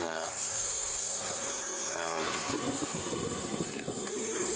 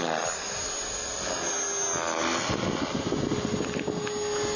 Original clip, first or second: second